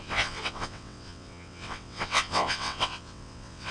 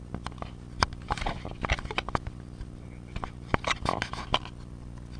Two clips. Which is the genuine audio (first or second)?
second